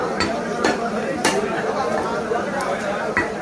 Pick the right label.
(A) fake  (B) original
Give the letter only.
A